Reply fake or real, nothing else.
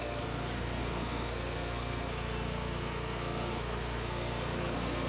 fake